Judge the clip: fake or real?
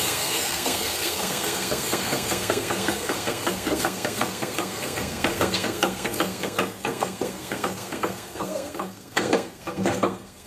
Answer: fake